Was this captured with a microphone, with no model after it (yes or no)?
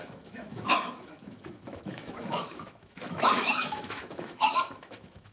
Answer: no